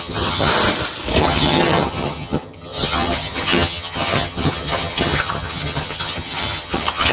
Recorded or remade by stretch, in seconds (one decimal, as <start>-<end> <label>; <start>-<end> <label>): 0.0-0.5 remade; 0.5-1.2 recorded; 1.2-7.1 remade